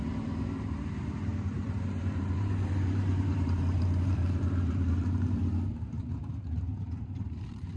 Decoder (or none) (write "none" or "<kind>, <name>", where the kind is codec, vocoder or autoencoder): vocoder, BigVGAN v2